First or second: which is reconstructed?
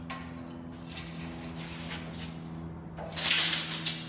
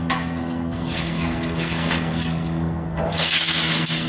second